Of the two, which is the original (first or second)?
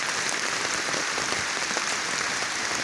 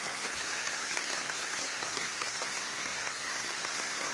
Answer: first